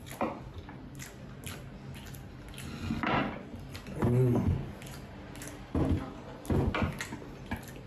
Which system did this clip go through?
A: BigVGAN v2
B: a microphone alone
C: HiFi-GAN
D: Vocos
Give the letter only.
B